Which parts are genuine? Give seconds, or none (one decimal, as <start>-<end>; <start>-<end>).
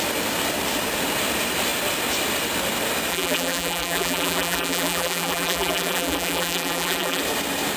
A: 0.0-3.1; 7.2-7.8